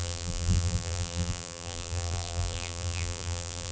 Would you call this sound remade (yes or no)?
yes